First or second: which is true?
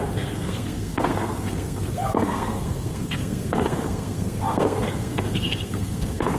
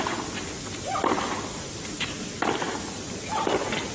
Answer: second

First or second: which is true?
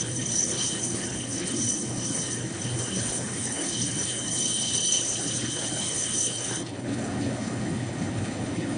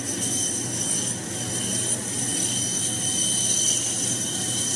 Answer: second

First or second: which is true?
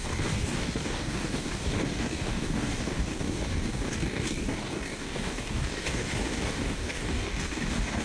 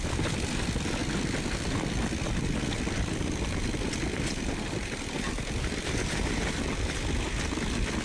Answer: second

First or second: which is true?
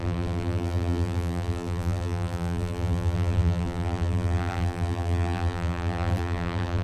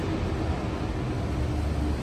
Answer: second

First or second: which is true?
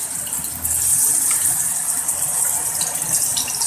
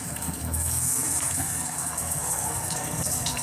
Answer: first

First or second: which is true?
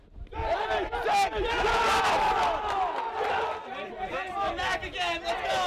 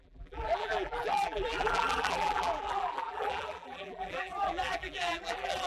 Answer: first